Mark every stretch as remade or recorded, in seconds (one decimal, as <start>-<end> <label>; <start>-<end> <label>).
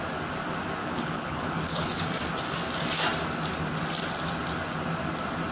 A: 0.0-0.8 recorded; 0.8-2.1 remade; 2.1-5.5 recorded